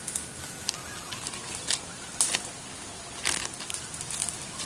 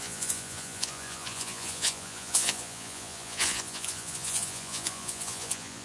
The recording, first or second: first